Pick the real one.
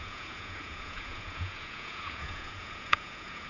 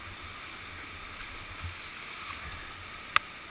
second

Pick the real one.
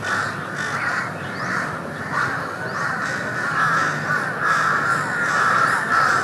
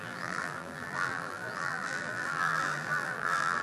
first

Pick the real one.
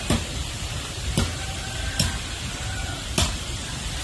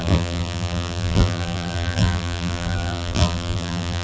first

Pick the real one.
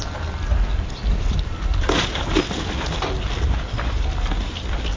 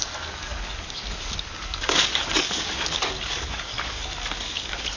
first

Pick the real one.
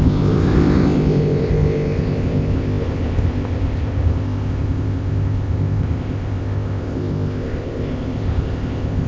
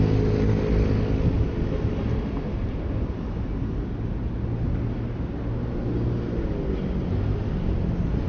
second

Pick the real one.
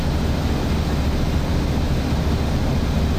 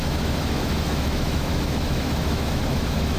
first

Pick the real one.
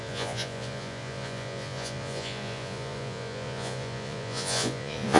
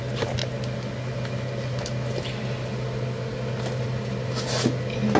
second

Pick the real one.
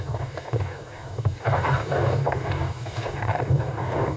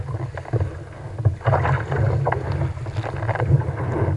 second